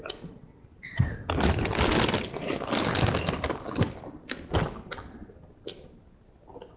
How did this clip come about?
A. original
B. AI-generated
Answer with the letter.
A